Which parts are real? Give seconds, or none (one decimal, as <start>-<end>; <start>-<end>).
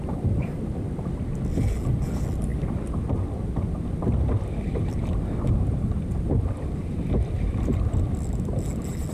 0.0-9.1